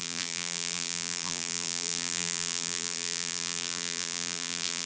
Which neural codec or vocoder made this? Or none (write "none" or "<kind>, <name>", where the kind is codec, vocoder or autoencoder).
vocoder, BigVGAN v2